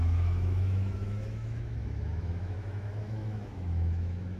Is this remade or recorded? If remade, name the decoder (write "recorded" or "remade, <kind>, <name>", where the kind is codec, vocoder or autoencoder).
remade, autoencoder, DAC-VAE